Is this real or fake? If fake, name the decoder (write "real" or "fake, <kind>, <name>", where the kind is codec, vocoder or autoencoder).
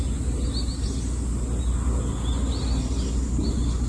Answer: real